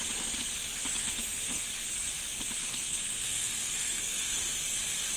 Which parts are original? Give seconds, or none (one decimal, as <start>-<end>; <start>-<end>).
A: 0.0-1.0; 1.6-2.6; 4.4-5.2